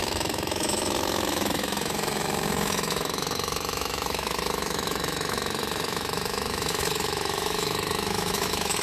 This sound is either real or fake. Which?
fake